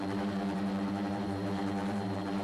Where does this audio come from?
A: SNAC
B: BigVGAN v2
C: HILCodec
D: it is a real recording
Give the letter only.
B